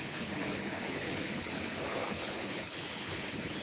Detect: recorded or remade remade